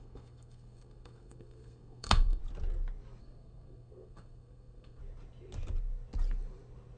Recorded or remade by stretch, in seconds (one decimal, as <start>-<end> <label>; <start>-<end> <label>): 0.0-2.4 remade; 2.4-3.2 recorded; 3.2-5.0 remade; 5.0-7.0 recorded